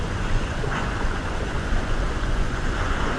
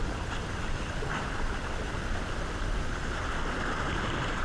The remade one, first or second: first